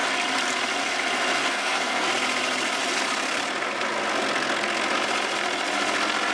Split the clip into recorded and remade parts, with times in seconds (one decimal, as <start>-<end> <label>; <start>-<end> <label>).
0.0-1.4 recorded; 1.4-2.1 remade; 2.1-6.3 recorded